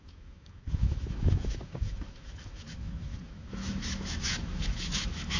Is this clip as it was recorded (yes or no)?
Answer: no